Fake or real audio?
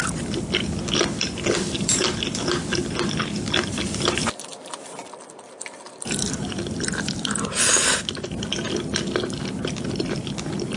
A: fake